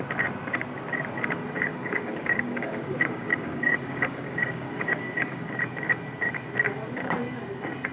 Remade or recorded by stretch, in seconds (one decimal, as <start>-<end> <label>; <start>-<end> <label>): 0.0-1.7 recorded; 1.7-5.5 remade; 5.5-7.9 recorded